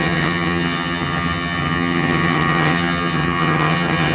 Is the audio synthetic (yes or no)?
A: yes